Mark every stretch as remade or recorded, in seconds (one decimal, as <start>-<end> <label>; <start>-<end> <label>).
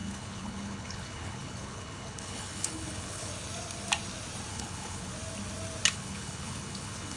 0.0-3.3 remade; 3.3-4.5 recorded; 4.5-5.1 remade; 5.1-5.9 recorded; 5.9-7.2 remade